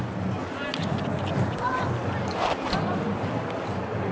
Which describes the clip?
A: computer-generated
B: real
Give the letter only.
B